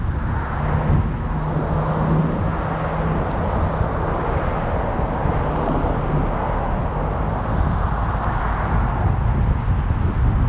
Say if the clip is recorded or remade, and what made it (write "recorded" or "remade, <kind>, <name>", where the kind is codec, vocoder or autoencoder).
recorded